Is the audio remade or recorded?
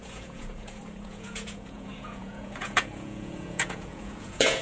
remade